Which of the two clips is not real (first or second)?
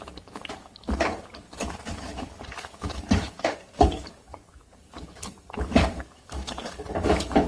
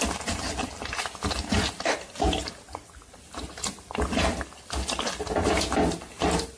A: first